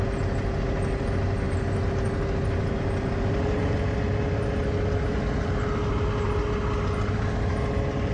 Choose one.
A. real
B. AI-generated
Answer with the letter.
A